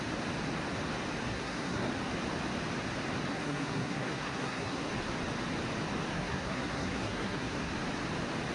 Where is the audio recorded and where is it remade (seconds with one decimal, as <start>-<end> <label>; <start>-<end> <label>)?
0.0-1.3 recorded; 1.3-1.9 remade; 1.9-3.3 recorded; 3.3-4.9 remade; 4.9-6.1 recorded; 6.1-7.7 remade; 7.7-8.5 recorded